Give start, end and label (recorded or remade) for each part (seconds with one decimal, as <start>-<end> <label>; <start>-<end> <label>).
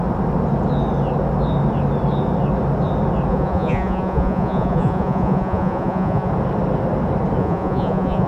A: 0.0-3.3 recorded; 3.3-6.3 remade; 6.3-7.4 recorded; 7.4-8.3 remade